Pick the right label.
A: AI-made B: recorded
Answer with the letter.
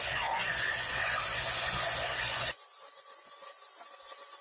A